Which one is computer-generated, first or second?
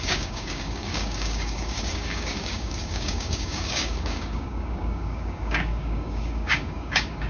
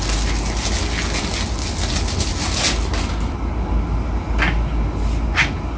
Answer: first